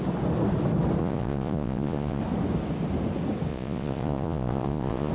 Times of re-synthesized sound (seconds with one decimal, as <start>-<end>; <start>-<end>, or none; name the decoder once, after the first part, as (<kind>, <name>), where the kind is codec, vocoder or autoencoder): 1.0-2.2 (vocoder, Vocos); 3.5-5.1